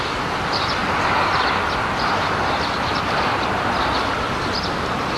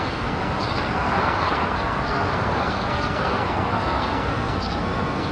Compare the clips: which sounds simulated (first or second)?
second